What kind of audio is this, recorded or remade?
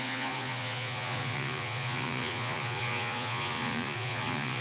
remade